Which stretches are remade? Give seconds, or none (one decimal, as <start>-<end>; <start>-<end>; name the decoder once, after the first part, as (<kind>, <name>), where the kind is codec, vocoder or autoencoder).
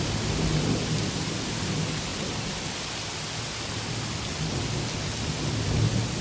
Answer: none